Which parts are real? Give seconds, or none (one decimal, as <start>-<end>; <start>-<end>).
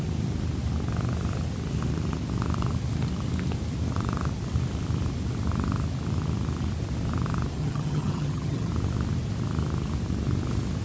0.0-7.6; 8.7-10.8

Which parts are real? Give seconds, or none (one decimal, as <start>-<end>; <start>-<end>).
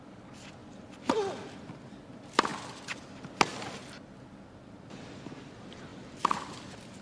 0.0-5.9; 6.6-7.0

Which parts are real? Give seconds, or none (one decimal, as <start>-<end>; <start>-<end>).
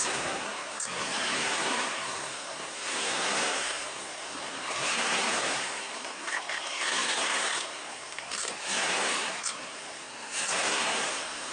none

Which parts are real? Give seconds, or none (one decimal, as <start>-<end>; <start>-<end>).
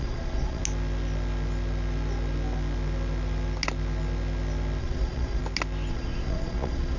0.6-4.8; 5.4-5.9